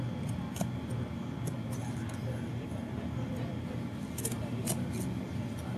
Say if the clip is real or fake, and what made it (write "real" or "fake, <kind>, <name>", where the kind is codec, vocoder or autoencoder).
real